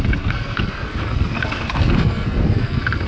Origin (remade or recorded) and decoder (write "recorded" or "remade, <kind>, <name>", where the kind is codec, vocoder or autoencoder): remade, codec, SNAC